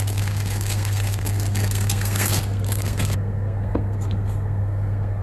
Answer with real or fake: fake